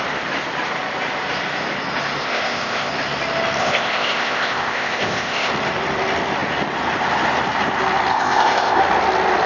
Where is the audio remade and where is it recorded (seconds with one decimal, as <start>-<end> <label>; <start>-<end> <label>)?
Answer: 0.0-2.2 recorded; 2.2-2.9 remade; 2.9-3.6 recorded; 3.6-5.5 remade; 5.5-8.1 recorded; 8.1-8.8 remade; 8.8-9.5 recorded